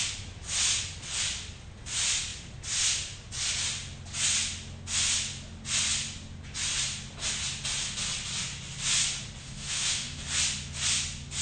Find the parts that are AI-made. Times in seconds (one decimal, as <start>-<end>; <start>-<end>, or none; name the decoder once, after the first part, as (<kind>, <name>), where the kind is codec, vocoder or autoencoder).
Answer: 9.4-10.2 (autoencoder, DAC-VAE)